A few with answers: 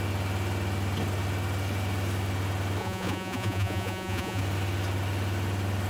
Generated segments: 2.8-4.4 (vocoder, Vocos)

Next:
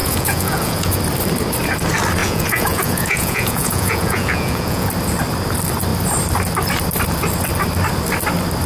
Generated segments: 0.0-1.0 (vocoder, Vocos); 2.2-4.9

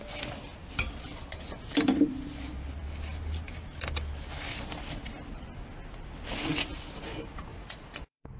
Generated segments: 7.5-8.4 (vocoder, Vocos)

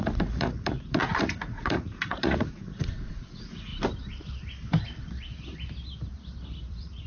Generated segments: 0.0-3.7 (vocoder, Vocos); 6.6-7.1

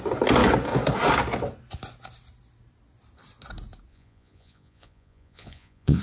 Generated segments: 3.9-6.0 (vocoder, Vocos)

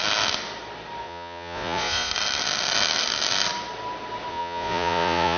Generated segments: 1.0-2.1 (vocoder, Vocos); 4.3-5.4

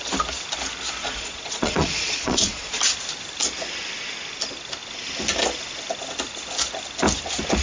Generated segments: 1.0-2.8 (vocoder, Vocos)

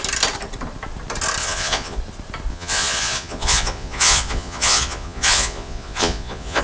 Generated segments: 1.4-2.0 (vocoder, Vocos); 2.5-6.6